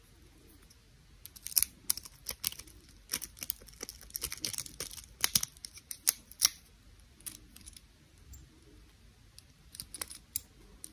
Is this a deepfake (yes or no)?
no